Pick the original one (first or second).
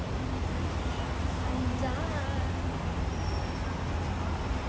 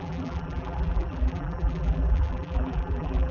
first